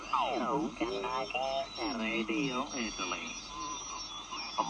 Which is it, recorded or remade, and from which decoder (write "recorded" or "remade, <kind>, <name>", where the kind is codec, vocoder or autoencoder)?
recorded